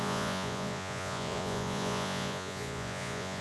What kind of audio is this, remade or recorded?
remade